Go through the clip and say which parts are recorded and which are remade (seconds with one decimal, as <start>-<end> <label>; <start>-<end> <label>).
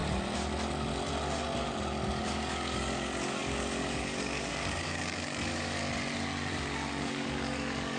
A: 0.0-2.2 recorded; 2.2-5.8 remade; 5.8-6.5 recorded; 6.5-8.0 remade